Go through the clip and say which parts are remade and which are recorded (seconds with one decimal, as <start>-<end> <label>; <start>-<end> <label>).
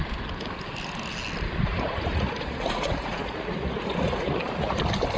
0.0-1.7 recorded; 1.7-4.8 remade; 4.8-5.2 recorded